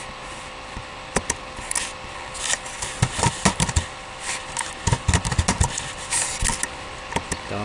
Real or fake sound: real